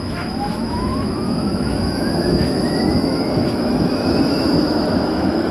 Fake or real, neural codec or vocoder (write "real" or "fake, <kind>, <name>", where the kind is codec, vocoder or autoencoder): fake, autoencoder, DAC-VAE